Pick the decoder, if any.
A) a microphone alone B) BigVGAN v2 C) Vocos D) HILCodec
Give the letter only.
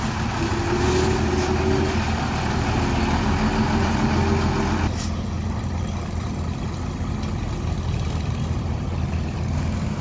A